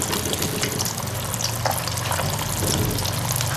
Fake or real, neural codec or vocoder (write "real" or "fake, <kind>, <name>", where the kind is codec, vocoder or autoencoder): real